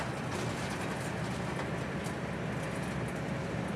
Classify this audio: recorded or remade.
recorded